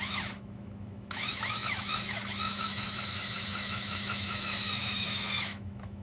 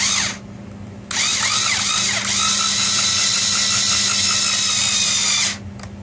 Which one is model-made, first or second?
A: first